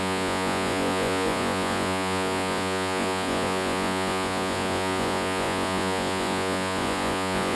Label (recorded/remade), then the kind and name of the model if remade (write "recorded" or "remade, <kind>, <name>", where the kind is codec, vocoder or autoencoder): remade, vocoder, Vocos